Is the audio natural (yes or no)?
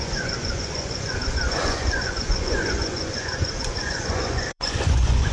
no